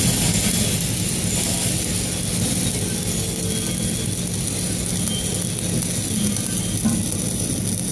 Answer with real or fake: real